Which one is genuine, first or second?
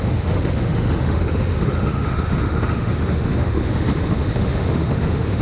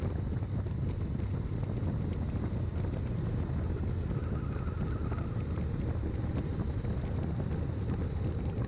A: second